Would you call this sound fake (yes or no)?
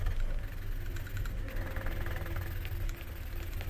no